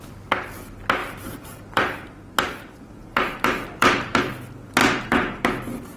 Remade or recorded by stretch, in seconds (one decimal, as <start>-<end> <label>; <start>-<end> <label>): 0.0-1.0 recorded; 1.0-4.2 remade; 4.2-4.8 recorded; 4.8-5.5 remade; 5.5-6.0 recorded